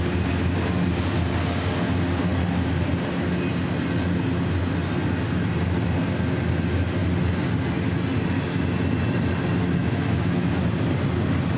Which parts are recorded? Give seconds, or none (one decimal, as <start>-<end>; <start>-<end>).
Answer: 0.0-9.8; 10.6-11.6